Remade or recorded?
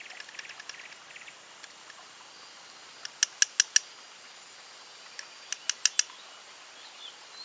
recorded